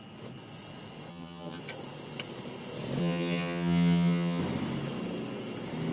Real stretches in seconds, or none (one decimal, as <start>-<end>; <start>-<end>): 0.0-1.1; 1.6-3.0; 4.4-5.9